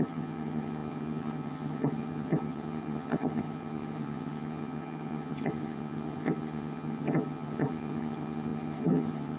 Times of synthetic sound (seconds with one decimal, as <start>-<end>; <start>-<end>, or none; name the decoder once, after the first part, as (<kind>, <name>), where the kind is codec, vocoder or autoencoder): 0.0-9.4 (vocoder, HiFi-GAN)